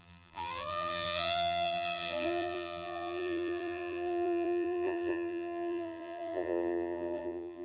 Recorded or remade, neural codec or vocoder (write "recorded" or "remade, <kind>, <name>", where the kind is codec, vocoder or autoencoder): remade, vocoder, BigVGAN v2